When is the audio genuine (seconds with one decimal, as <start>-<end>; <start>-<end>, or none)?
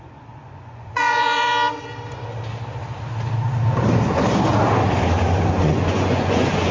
1.5-5.5